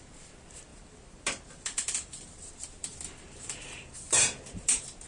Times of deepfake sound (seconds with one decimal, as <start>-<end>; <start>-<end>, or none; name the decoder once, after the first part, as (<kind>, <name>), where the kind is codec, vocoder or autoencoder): none